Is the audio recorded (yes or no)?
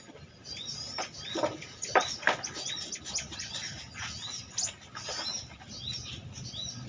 yes